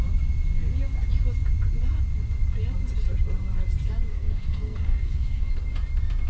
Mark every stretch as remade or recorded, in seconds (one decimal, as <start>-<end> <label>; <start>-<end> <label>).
0.0-4.1 recorded; 4.1-5.5 remade; 5.5-6.3 recorded